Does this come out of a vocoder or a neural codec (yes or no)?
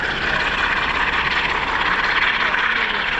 no